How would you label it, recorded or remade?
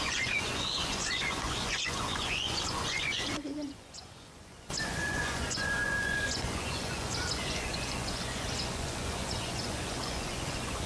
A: remade